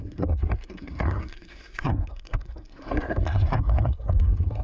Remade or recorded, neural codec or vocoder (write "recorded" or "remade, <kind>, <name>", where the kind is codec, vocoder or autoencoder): remade, codec, SNAC